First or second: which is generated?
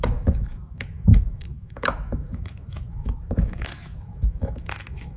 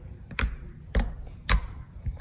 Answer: first